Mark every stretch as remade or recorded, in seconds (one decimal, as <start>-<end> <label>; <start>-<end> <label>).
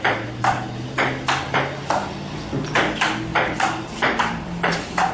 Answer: 0.0-3.3 recorded; 3.3-5.1 remade